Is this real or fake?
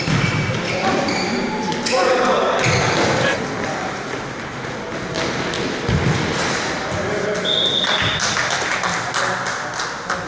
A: real